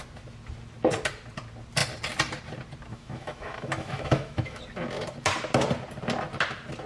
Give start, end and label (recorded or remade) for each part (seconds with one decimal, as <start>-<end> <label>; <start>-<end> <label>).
0.0-2.9 recorded; 2.9-4.6 remade; 4.6-6.9 recorded